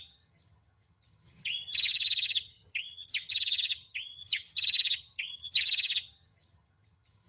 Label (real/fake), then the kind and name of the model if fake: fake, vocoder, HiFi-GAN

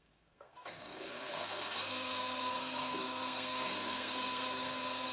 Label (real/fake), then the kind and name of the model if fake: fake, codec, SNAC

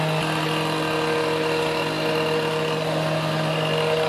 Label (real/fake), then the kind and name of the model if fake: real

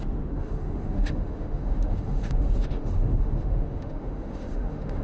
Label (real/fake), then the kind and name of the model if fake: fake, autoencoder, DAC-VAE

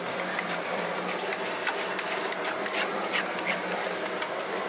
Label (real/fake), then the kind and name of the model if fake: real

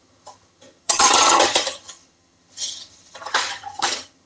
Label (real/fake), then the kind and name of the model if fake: fake, vocoder, HiFi-GAN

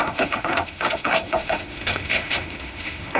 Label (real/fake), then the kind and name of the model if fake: fake, autoencoder, DAC-VAE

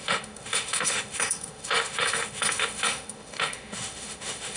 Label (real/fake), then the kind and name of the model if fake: fake, autoencoder, DAC-VAE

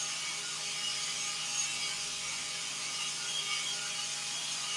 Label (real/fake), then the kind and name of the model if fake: fake, vocoder, Vocos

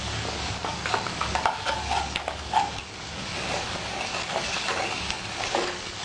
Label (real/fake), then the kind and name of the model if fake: fake, codec, DAC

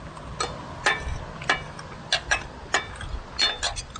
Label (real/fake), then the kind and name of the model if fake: real